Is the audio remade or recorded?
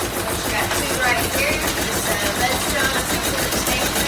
recorded